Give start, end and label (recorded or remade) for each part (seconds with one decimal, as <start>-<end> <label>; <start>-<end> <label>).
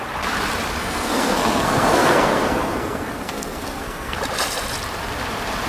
0.0-0.8 recorded; 0.8-4.2 remade; 4.2-5.7 recorded